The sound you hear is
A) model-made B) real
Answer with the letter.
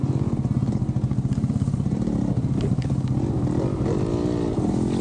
B